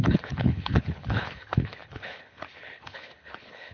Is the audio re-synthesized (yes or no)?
yes